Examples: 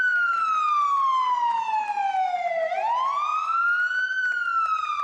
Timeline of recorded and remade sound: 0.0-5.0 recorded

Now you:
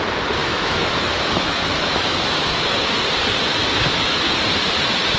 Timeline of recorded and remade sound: 0.0-0.4 recorded; 0.4-3.0 remade; 3.0-3.5 recorded; 3.5-4.2 remade; 4.2-5.2 recorded

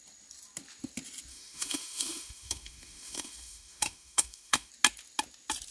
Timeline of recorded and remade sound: 0.0-1.3 recorded; 1.3-4.7 remade; 4.7-5.7 recorded

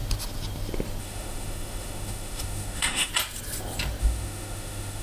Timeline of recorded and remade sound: 0.0-1.0 recorded; 1.0-3.1 remade; 3.1-4.0 recorded; 4.0-5.0 remade

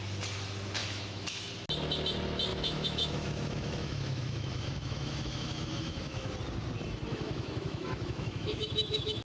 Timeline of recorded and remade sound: 0.0-0.8 recorded; 0.8-1.5 remade; 1.5-2.5 recorded; 2.5-6.3 remade; 6.3-7.1 recorded; 7.1-9.2 remade